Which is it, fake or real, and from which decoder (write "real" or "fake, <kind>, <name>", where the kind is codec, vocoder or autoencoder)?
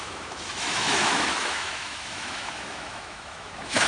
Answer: fake, autoencoder, DAC-VAE